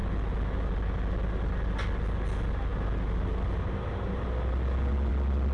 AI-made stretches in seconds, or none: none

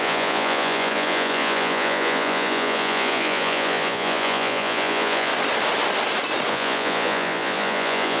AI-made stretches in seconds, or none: 0.0-5.3 (vocoder, Vocos); 6.5-8.2

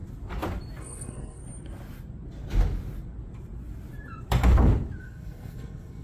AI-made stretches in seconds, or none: 0.8-1.4 (codec, SNAC); 5.0-6.0

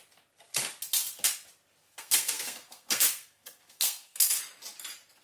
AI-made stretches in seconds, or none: 1.8-4.4 (codec, SNAC)

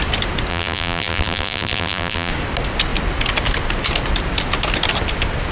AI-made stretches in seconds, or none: 0.5-2.3 (vocoder, BigVGAN v2)

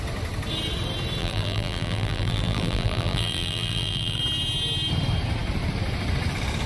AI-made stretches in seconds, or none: 1.2-4.2 (vocoder, BigVGAN v2)